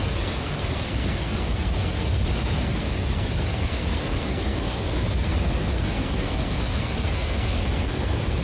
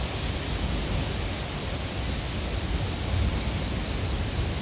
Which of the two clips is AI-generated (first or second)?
first